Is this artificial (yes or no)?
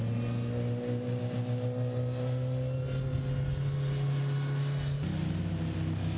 no